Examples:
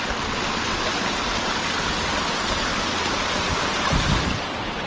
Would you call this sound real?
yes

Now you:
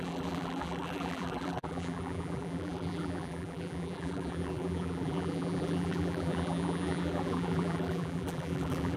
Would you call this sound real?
no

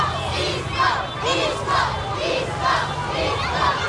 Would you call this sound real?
yes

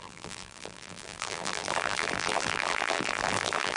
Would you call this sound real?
no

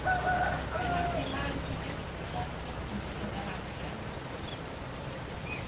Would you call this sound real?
yes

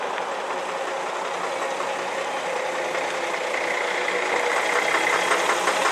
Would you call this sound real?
yes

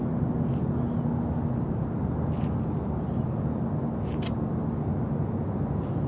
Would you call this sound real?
yes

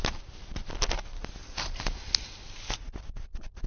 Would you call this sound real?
yes